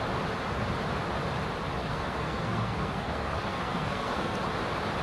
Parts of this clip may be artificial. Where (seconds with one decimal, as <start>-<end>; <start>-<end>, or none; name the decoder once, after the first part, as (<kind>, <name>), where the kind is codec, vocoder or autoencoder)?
1.8-4.4 (codec, SNAC)